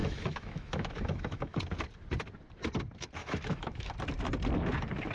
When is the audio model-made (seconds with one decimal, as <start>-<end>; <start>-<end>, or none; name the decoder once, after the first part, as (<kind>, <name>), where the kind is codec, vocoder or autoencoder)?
0.0-1.6 (autoencoder, DAC-VAE); 3.2-3.9